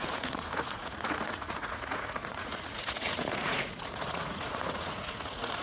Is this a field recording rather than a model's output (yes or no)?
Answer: no